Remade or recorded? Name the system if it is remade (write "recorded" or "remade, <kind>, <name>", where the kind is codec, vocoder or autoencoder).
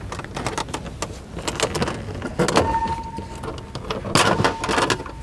recorded